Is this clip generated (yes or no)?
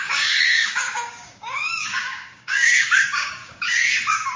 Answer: yes